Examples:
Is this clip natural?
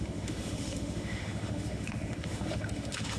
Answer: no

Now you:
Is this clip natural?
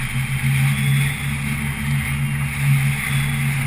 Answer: yes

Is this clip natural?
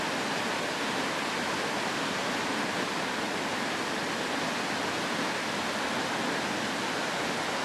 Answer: yes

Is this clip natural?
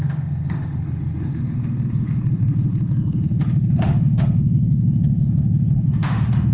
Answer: no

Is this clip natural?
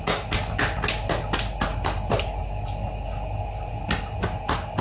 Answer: yes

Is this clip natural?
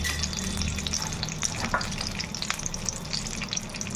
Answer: yes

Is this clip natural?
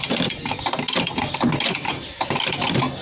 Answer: yes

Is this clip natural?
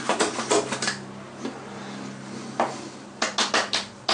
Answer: yes